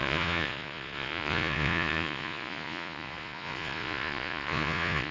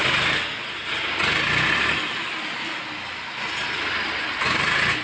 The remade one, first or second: first